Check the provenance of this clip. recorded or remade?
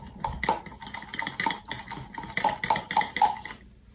remade